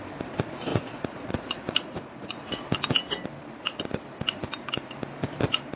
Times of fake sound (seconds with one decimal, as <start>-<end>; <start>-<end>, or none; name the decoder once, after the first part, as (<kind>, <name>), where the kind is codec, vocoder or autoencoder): 0.7-2.5 (vocoder, Vocos)